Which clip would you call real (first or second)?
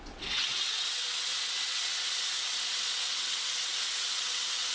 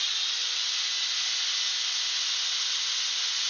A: second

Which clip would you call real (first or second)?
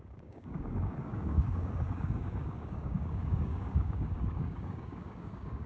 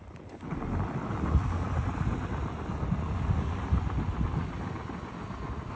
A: second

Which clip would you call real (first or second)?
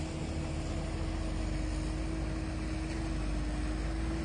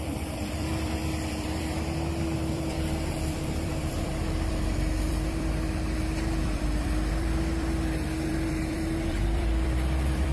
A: first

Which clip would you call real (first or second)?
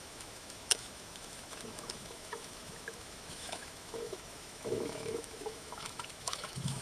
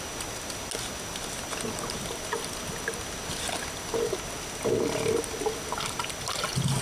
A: second